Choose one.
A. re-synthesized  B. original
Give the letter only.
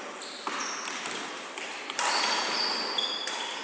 B